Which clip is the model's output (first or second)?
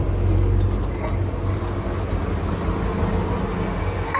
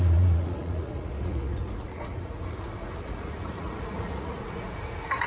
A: second